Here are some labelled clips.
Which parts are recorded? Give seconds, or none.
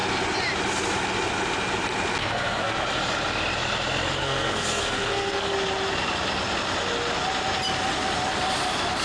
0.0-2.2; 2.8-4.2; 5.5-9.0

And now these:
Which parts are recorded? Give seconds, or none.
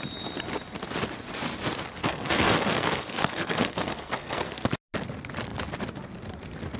0.0-2.0; 4.5-6.8